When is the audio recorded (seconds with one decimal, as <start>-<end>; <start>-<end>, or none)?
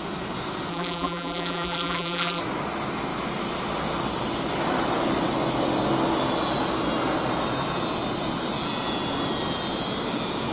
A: 0.0-0.7; 2.4-10.5